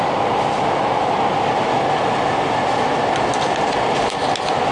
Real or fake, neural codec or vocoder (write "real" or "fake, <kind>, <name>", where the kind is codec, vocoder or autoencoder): real